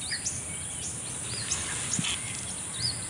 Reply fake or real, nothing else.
real